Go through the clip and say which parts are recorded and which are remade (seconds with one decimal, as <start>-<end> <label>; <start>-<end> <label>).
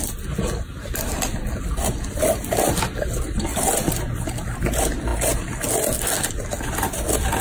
0.0-7.4 recorded